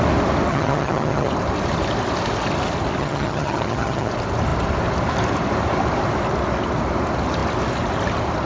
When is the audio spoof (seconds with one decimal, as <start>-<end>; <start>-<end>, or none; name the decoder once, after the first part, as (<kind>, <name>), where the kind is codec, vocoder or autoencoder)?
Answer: 0.5-1.3 (vocoder, HiFi-GAN); 3.0-4.1